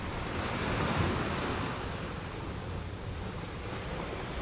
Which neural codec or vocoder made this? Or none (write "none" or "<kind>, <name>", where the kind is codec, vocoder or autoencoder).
vocoder, BigVGAN v2